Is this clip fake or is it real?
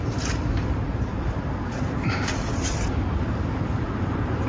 fake